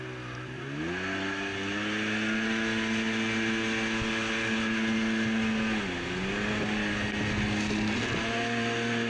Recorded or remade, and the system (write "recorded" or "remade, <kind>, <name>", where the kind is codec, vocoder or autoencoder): recorded